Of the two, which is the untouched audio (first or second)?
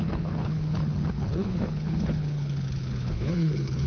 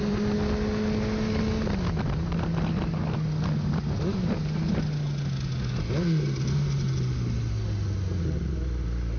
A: second